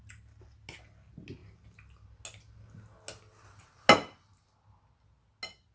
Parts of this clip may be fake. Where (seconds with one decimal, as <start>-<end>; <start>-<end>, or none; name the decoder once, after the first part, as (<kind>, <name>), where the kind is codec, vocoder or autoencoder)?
none